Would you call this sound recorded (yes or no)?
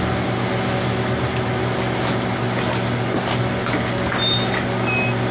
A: yes